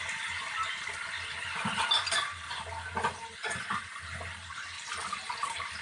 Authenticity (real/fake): real